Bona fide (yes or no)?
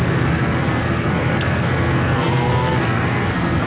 no